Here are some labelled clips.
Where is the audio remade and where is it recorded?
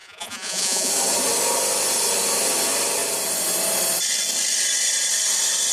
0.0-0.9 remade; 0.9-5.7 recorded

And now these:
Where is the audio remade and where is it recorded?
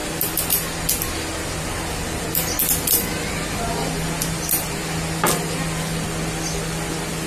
0.0-7.3 recorded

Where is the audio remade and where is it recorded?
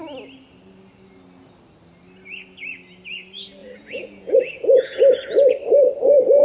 0.0-3.6 recorded; 3.6-5.0 remade; 5.0-6.4 recorded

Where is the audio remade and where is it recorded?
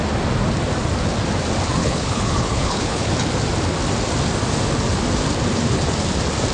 0.0-1.8 recorded; 1.8-3.1 remade; 3.1-6.5 recorded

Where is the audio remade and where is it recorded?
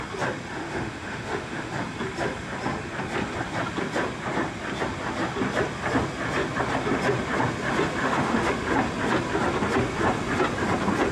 0.0-0.6 recorded; 0.6-1.7 remade; 1.7-8.0 recorded; 8.0-8.5 remade; 8.5-11.1 recorded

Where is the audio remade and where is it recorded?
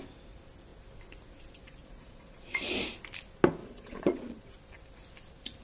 0.0-1.8 recorded; 1.8-2.6 remade; 2.6-3.6 recorded; 3.6-4.5 remade; 4.5-5.6 recorded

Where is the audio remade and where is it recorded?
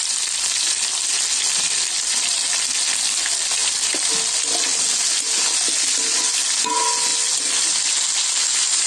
0.0-8.9 recorded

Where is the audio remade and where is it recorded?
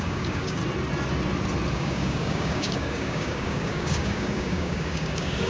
0.0-0.6 remade; 0.6-1.7 recorded; 1.7-5.5 remade